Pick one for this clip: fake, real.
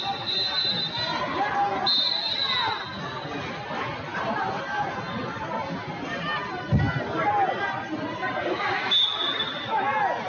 real